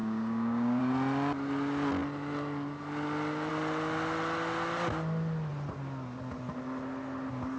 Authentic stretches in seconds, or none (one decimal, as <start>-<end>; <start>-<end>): 0.8-7.6